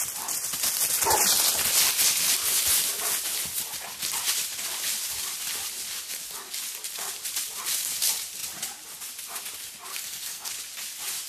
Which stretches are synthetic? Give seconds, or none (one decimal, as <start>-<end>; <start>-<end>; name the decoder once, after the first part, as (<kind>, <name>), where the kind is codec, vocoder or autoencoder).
9.9-10.5 (codec, SNAC)